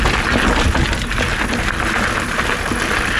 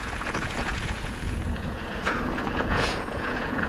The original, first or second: first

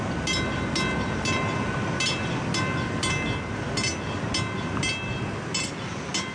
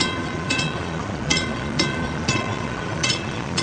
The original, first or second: first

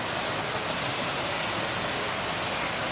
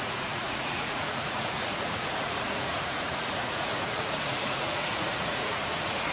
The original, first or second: first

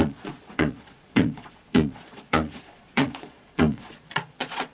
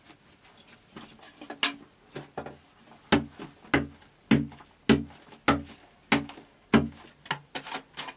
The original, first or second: second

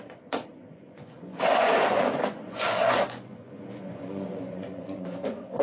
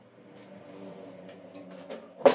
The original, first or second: second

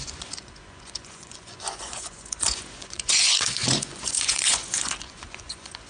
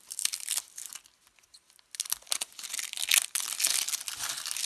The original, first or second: second